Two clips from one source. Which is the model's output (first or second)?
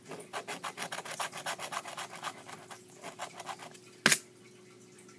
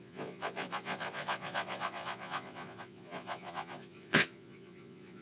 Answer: second